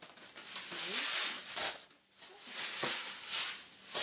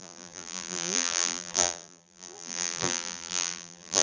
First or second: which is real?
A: first